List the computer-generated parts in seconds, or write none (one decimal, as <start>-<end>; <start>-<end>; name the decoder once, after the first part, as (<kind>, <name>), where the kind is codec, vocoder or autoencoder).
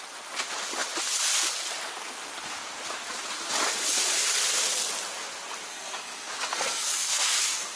5.7-7.8 (codec, SNAC)